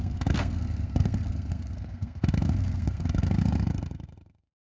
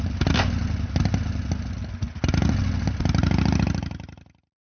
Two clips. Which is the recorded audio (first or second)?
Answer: second